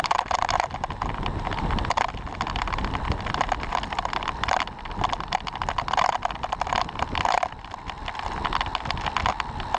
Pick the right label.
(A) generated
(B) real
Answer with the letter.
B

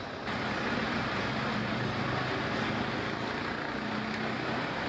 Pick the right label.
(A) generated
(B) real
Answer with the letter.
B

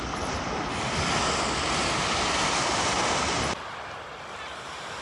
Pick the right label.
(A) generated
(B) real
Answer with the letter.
B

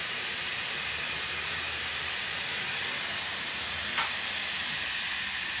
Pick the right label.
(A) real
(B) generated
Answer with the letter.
B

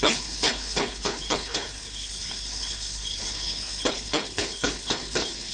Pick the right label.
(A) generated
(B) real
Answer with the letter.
A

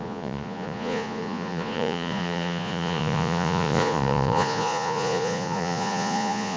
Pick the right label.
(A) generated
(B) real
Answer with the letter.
A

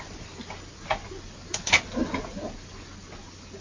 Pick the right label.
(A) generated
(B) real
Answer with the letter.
B